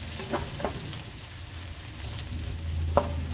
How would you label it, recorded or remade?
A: recorded